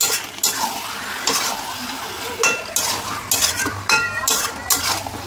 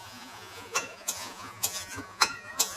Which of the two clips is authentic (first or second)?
first